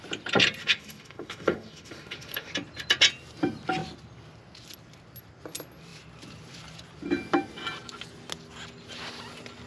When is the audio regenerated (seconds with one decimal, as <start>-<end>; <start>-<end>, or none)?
0.6-2.5